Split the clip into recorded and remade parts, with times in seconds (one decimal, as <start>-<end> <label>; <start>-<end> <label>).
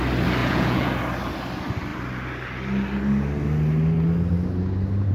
0.0-0.4 recorded; 0.4-0.9 remade; 0.9-5.1 recorded